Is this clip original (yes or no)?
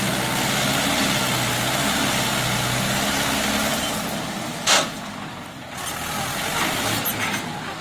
yes